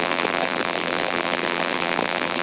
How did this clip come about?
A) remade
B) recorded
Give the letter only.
A